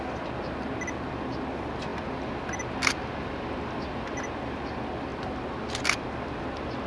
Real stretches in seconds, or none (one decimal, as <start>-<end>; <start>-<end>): 0.0-6.9

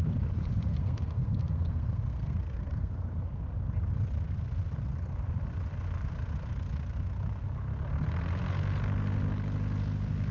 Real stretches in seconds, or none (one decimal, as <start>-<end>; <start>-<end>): 0.0-0.7; 2.9-10.3

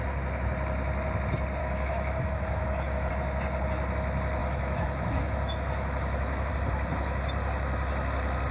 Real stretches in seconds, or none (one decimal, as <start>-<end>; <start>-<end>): 0.0-1.6; 3.1-4.4; 6.5-8.5

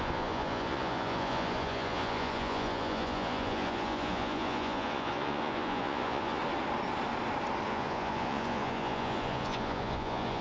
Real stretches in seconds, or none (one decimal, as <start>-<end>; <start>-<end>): 6.4-7.7

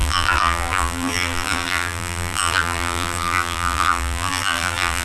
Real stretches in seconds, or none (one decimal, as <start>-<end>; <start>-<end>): none

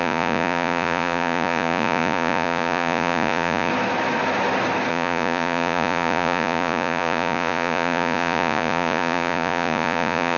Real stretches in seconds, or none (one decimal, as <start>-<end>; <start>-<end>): 3.7-4.9

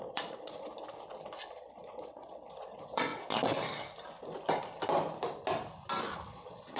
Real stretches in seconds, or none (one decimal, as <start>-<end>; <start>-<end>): 0.7-1.5; 3.1-6.3